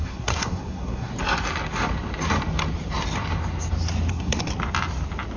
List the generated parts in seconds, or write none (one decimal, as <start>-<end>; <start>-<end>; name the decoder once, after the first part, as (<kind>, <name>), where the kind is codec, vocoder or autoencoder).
0.0-1.1 (codec, SNAC); 4.1-4.5